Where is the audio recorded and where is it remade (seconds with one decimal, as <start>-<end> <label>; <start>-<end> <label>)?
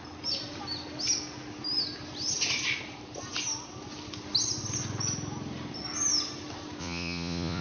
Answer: 0.0-6.8 recorded; 6.8-7.6 remade